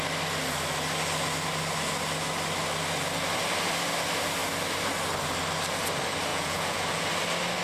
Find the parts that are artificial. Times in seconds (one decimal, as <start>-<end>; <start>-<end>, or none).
6.3-7.1